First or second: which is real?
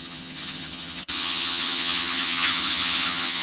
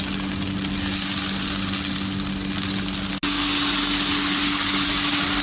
second